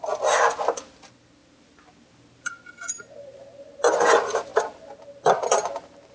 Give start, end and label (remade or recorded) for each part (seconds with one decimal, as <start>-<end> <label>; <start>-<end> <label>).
0.0-6.1 recorded